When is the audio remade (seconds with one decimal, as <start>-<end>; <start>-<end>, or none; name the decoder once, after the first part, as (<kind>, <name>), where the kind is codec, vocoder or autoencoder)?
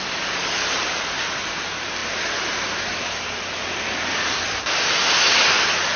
none